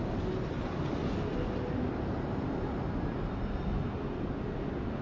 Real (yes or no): yes